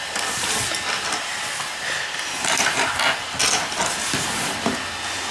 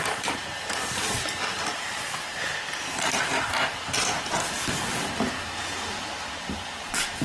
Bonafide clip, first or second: first